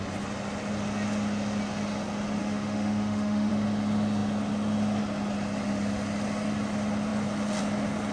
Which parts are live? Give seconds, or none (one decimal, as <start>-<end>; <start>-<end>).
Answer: 0.0-2.4; 3.5-8.1